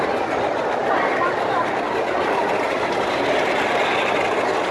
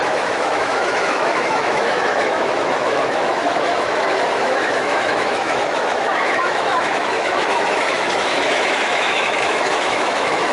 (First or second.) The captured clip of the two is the first